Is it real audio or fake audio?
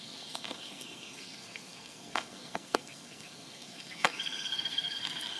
fake